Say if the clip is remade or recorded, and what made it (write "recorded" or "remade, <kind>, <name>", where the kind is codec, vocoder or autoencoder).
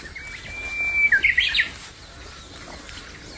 recorded